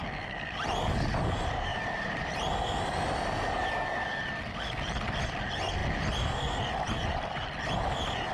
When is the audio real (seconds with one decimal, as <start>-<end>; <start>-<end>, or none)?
0.0-1.7; 2.5-8.3